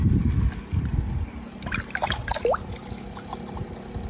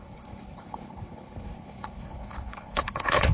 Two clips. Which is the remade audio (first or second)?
second